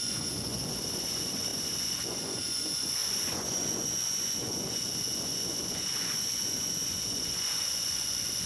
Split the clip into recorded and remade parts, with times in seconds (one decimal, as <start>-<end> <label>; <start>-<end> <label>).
0.0-8.5 remade